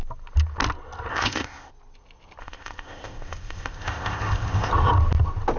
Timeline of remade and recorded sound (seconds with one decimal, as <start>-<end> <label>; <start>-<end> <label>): 0.0-1.1 recorded; 1.1-1.7 remade; 1.7-2.4 recorded; 2.4-4.7 remade; 4.7-5.6 recorded